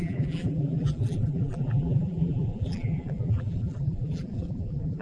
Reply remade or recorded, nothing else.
remade